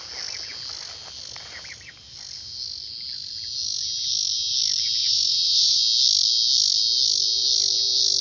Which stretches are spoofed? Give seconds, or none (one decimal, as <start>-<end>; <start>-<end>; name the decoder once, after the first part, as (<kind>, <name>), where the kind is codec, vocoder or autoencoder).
5.0-5.8 (vocoder, Vocos)